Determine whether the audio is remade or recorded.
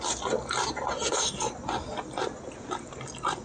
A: recorded